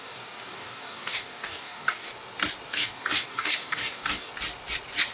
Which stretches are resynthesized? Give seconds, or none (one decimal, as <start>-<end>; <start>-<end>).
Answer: 0.0-2.1; 2.7-4.3